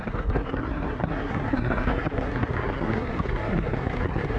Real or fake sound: fake